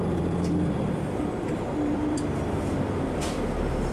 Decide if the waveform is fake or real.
fake